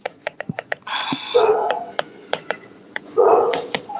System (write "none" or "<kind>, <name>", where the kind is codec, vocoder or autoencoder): vocoder, Vocos